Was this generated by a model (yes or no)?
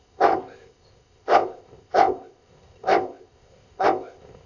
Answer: yes